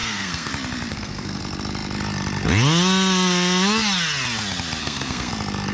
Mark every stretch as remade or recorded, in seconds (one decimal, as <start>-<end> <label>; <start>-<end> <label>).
0.0-0.5 remade; 0.5-0.9 recorded; 0.9-1.4 remade; 1.4-4.8 recorded; 4.8-5.3 remade; 5.3-5.7 recorded